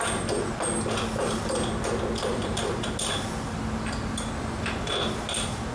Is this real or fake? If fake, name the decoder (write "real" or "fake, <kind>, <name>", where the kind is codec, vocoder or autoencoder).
real